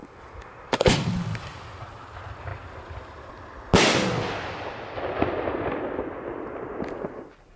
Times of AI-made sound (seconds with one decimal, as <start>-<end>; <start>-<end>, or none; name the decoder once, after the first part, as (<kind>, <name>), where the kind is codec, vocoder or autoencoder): 2.5-3.3 (vocoder, BigVGAN v2)